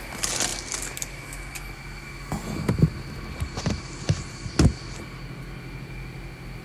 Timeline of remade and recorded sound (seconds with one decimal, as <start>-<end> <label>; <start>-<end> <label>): 0.0-6.6 recorded